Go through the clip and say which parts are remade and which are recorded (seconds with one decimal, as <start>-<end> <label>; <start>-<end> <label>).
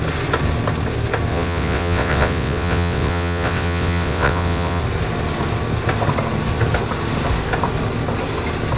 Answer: 0.0-1.3 recorded; 1.3-4.8 remade; 4.8-8.8 recorded